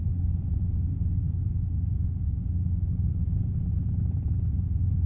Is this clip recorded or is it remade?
recorded